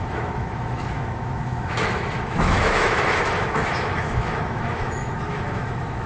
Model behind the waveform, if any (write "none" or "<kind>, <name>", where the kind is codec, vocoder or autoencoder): autoencoder, DAC-VAE